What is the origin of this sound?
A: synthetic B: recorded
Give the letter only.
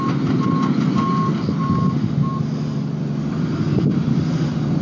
B